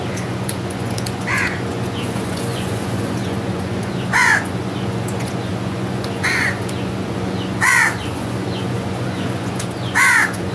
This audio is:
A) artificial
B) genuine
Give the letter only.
A